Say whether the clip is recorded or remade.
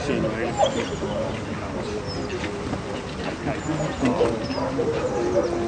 recorded